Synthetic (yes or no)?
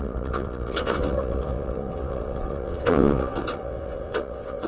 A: yes